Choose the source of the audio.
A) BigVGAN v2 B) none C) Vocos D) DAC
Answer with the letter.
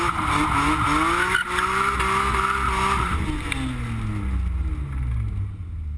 B